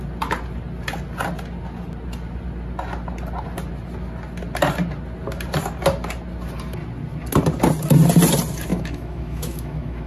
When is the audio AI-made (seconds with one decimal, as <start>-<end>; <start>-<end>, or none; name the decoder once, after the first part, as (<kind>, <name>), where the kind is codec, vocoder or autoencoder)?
8.7-10.1 (autoencoder, DAC-VAE)